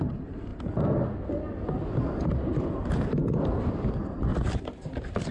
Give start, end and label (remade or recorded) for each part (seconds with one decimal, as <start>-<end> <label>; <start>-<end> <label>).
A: 0.0-0.5 remade; 0.5-3.6 recorded; 3.6-4.3 remade; 4.3-5.3 recorded